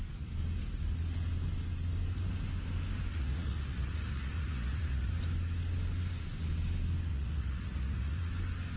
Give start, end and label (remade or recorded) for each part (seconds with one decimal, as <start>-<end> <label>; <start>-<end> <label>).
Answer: 0.0-3.1 recorded; 3.1-5.1 remade; 5.1-7.1 recorded; 7.1-8.3 remade; 8.3-8.8 recorded